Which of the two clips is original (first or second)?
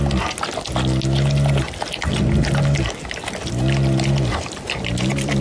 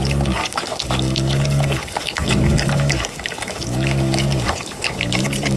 first